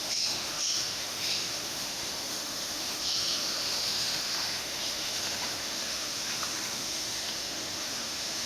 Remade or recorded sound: remade